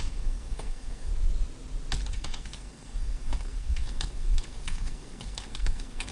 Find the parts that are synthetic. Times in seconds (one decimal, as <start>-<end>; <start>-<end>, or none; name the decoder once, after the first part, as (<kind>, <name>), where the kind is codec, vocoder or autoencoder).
0.0-1.1 (codec, SNAC); 2.1-6.1